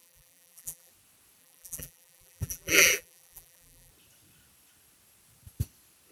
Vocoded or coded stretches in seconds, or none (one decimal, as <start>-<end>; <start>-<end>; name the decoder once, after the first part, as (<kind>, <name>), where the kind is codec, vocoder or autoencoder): 0.0-0.9 (vocoder, BigVGAN v2); 1.4-3.9